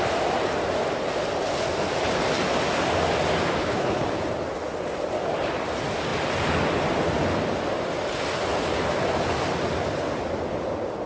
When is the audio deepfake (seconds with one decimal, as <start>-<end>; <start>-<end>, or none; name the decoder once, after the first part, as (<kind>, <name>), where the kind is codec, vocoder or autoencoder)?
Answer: 3.6-4.1 (codec, HILCodec)